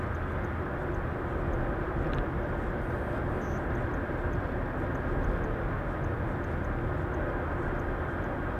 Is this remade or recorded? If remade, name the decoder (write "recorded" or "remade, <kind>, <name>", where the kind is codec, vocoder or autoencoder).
recorded